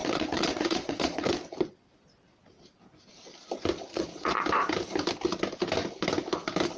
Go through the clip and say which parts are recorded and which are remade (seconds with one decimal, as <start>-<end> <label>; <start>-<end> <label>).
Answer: 0.0-1.3 remade; 1.3-3.9 recorded; 3.9-4.4 remade; 4.4-6.8 recorded